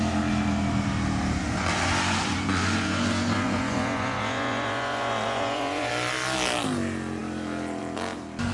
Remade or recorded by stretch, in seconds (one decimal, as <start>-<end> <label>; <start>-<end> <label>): 0.0-1.4 recorded; 1.4-5.9 remade; 5.9-8.5 recorded